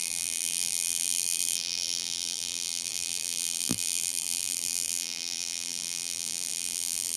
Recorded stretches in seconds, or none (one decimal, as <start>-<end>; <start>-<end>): none

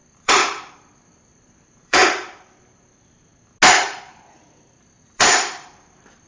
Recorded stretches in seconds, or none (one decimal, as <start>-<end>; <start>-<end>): 2.0-2.6; 3.3-4.8

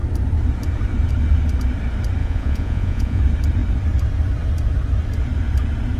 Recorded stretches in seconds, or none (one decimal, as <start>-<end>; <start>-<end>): 0.0-2.2; 3.2-6.0

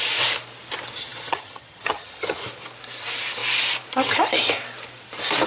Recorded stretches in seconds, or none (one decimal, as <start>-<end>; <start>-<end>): 0.0-1.0; 2.4-5.5

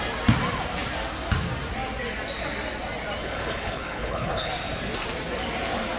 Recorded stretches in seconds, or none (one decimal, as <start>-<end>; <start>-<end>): 0.0-3.2; 4.5-6.0

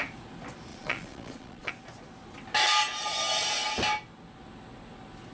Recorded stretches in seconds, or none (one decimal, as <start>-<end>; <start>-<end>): 0.0-0.7; 1.7-5.3

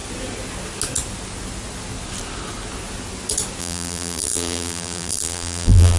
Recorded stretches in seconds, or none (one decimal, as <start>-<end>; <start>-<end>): 0.0-3.6

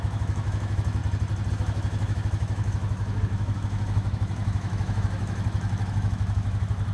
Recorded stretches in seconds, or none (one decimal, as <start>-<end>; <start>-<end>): 1.0-1.5